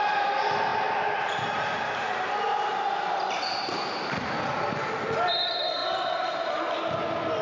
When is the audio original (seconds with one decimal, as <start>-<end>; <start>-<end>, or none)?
0.0-7.4